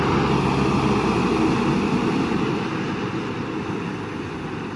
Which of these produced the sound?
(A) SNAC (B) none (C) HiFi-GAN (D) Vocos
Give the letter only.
B